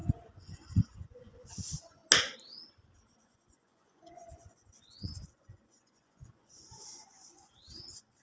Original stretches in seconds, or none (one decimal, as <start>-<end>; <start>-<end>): 2.0-3.2